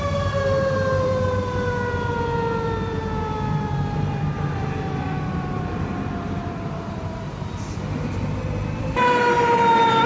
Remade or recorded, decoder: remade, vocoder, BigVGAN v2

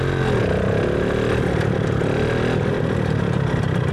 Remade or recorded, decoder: recorded